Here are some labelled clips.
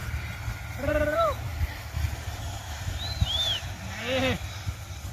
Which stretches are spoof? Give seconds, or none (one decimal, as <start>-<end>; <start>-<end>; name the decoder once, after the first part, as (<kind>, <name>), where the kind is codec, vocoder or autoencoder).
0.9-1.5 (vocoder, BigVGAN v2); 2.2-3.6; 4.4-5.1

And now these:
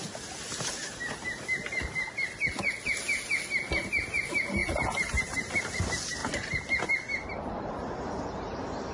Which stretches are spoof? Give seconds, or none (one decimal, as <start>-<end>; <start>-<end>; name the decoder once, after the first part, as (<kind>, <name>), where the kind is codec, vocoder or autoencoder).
none

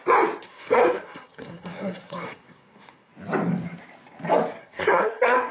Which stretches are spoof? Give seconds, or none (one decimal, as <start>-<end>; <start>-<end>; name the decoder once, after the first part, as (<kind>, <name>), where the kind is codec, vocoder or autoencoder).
0.4-3.1 (codec, SNAC); 4.6-5.5